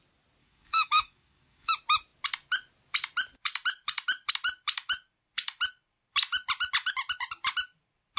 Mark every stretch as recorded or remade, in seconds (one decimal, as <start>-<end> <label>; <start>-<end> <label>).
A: 0.0-0.4 recorded; 0.4-1.7 remade; 1.7-8.2 recorded

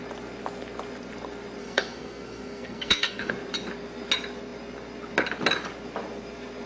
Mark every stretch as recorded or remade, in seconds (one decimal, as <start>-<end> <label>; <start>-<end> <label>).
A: 0.0-1.6 recorded; 1.6-3.3 remade; 3.3-6.7 recorded

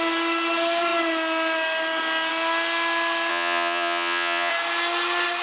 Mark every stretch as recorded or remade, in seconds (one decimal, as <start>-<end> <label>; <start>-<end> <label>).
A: 0.0-3.3 recorded; 3.3-4.5 remade; 4.5-5.4 recorded

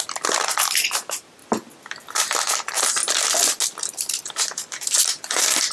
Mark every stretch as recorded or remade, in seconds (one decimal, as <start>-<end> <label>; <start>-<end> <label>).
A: 0.0-1.4 remade; 1.4-2.5 recorded; 2.5-3.0 remade; 3.0-3.8 recorded; 3.8-5.7 remade

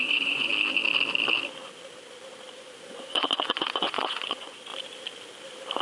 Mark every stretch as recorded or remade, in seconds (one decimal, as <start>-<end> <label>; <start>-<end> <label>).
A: 0.0-0.5 remade; 0.5-2.6 recorded; 2.6-4.7 remade; 4.7-5.8 recorded

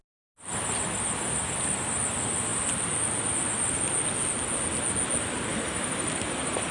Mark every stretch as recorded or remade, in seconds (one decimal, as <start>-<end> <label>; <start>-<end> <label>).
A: 0.0-6.7 recorded